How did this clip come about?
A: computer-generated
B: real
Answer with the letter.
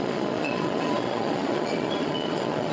A